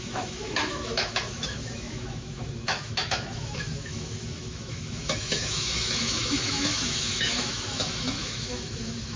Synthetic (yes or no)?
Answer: yes